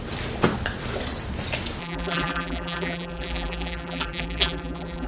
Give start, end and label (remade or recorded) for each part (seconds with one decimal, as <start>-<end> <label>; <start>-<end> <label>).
0.0-1.8 recorded; 1.8-5.1 remade